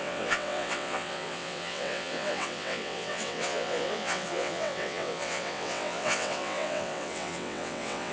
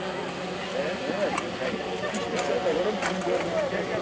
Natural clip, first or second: second